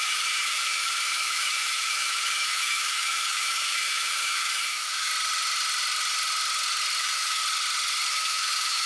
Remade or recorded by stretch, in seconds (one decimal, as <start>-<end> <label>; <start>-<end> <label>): 0.0-5.1 remade; 5.1-7.0 recorded; 7.0-7.4 remade; 7.4-8.1 recorded; 8.1-8.9 remade